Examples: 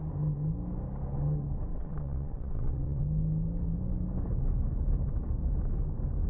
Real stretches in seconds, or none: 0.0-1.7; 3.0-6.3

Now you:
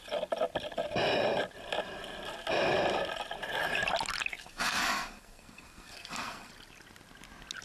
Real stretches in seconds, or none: 0.0-4.3; 6.5-7.6

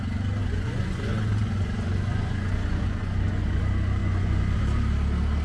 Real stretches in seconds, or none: 0.0-0.4; 3.6-4.0; 4.6-5.4

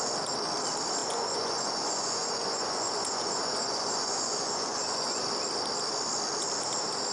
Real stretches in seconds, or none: 0.0-1.0; 5.3-7.1

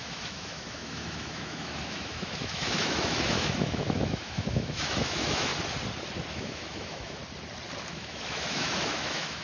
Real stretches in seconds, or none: 5.5-6.3; 7.2-7.9

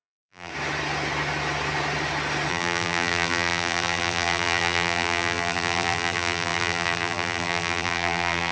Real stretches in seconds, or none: 0.5-2.5

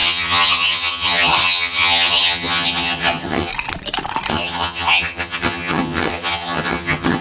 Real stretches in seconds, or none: 3.5-4.3

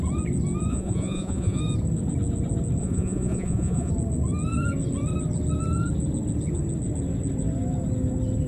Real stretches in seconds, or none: 0.0-0.7; 1.6-2.8; 3.9-8.5